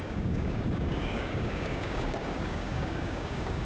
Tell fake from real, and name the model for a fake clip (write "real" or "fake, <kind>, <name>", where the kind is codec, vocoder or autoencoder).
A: fake, codec, DAC